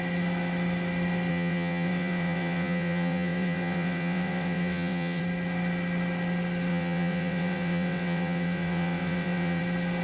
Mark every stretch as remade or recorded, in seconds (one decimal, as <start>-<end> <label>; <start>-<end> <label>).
0.0-1.3 recorded; 1.3-5.2 remade; 5.2-6.7 recorded; 6.7-9.6 remade; 9.6-10.0 recorded